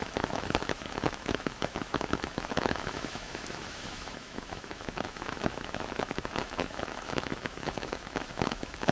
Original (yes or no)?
no